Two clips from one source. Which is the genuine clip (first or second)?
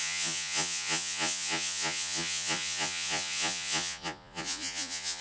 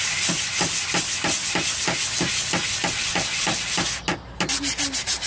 second